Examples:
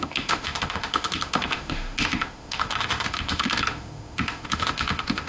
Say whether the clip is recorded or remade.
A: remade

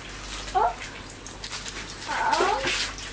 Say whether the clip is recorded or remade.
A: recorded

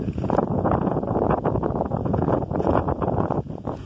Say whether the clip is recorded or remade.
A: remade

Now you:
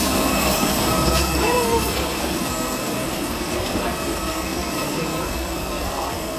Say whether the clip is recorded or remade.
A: remade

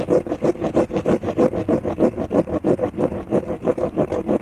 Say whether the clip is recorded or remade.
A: recorded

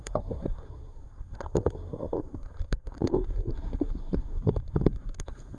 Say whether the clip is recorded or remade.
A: remade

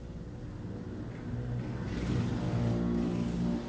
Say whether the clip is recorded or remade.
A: recorded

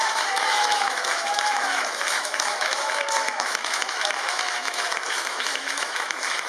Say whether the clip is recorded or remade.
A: remade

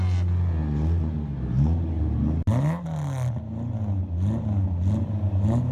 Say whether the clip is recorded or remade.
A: recorded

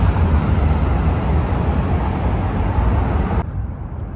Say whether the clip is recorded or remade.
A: recorded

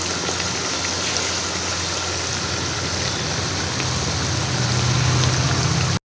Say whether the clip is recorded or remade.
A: recorded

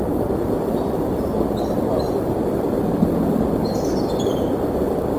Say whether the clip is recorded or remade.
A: recorded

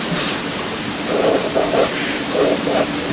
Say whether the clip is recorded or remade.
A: remade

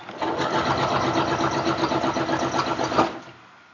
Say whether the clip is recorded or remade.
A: recorded